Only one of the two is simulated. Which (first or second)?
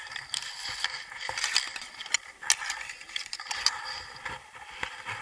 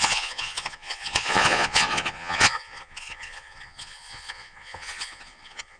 second